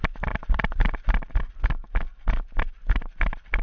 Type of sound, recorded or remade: recorded